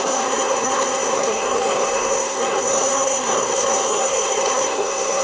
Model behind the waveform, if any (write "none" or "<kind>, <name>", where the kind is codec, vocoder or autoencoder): codec, SNAC